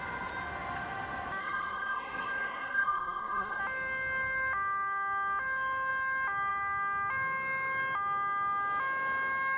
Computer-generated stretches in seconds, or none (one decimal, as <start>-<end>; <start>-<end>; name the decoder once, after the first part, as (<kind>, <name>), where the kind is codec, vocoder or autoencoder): 1.4-3.6 (codec, SNAC)